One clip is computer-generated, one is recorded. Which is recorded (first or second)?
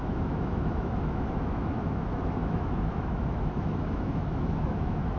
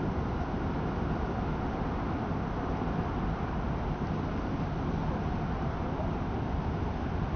second